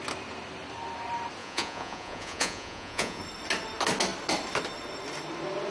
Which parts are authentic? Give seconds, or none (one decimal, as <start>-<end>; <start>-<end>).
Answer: 0.0-1.4; 3.2-5.7

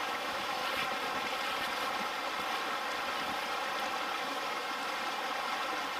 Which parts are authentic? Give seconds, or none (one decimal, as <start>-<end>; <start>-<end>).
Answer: 0.6-4.2; 4.8-6.0

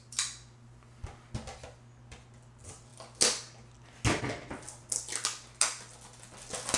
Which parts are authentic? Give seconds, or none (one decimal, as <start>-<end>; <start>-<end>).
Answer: 0.0-6.8

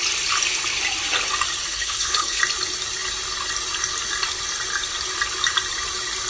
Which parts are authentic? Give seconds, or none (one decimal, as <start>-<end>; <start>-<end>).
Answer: 0.0-1.7; 2.4-6.3